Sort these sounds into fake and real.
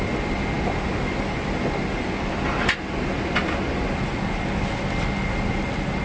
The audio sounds real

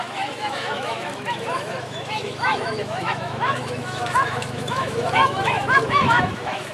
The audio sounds fake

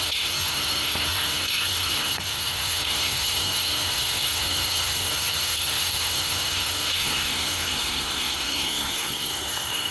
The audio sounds fake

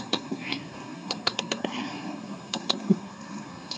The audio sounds fake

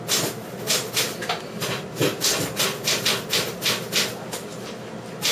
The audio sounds real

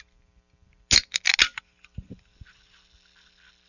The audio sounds real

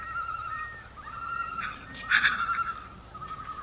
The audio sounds real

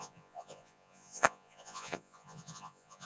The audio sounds fake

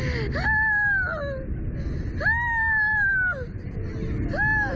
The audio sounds real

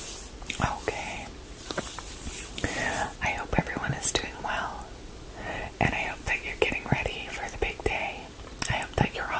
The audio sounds real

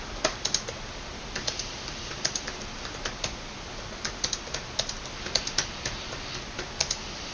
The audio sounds real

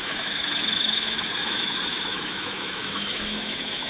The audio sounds fake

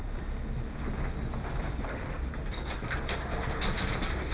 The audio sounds real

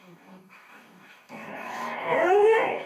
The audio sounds fake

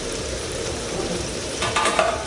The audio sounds fake